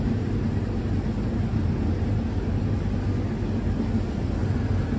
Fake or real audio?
real